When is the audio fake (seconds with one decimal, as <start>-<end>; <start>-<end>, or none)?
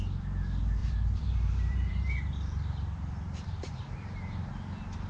0.8-3.9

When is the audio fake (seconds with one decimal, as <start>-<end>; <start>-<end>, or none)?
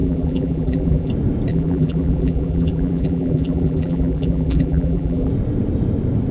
0.0-1.1; 1.5-5.3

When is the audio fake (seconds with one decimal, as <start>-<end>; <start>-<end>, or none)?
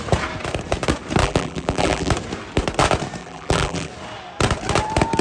1.2-2.1; 3.2-3.9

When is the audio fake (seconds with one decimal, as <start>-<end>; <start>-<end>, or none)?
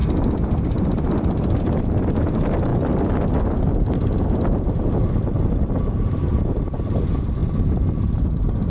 0.0-1.6; 2.7-5.2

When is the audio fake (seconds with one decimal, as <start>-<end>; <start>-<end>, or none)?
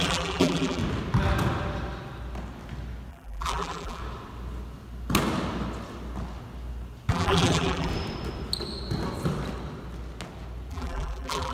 0.0-0.8; 3.1-4.0; 7.1-7.9; 10.7-11.5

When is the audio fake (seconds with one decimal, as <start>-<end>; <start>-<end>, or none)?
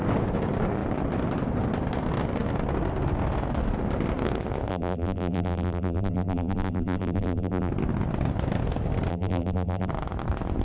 4.7-7.7; 9.1-9.9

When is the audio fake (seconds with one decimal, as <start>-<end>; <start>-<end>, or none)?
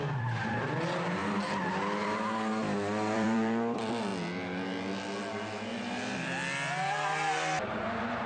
0.0-1.2; 2.0-4.1; 7.9-8.3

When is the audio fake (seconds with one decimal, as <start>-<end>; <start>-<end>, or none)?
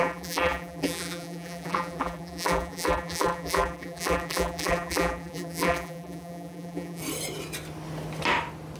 0.0-7.0